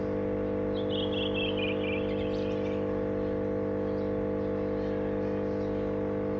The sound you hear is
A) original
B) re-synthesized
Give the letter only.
A